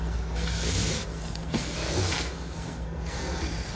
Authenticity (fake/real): fake